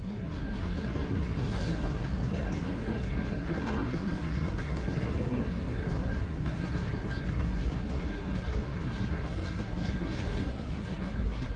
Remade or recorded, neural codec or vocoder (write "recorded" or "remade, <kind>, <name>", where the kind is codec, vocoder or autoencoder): remade, codec, SNAC